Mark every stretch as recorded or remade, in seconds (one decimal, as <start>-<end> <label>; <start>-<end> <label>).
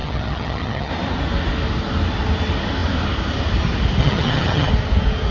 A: 0.0-0.9 remade; 0.9-4.0 recorded; 4.0-4.7 remade; 4.7-5.3 recorded